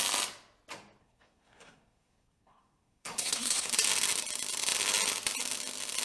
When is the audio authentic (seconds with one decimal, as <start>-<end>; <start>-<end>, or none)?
0.0-1.0; 3.7-6.0